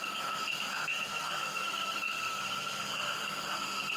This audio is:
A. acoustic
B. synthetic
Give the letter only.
B